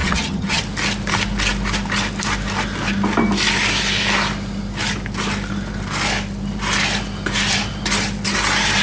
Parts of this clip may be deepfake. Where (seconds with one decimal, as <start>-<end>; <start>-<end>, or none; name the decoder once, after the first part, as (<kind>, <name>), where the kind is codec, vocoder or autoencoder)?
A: 0.0-0.6 (vocoder, HiFi-GAN)